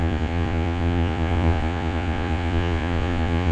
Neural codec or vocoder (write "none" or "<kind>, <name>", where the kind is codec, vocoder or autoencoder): vocoder, Vocos